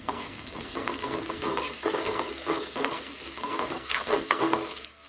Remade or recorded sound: remade